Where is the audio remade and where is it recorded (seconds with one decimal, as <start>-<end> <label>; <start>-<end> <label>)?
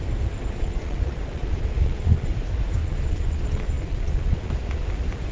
0.0-0.4 recorded; 0.4-2.3 remade; 2.3-2.8 recorded; 2.8-4.5 remade; 4.5-5.3 recorded